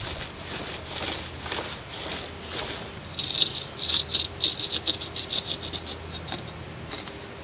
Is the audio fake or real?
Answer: real